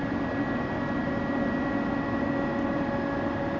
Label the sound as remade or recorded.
recorded